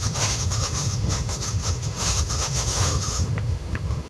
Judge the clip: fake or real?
fake